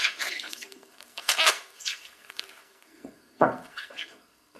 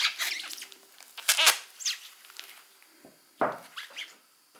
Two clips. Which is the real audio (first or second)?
second